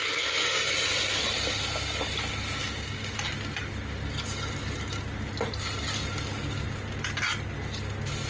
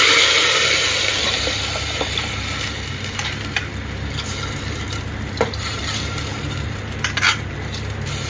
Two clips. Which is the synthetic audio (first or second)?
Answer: second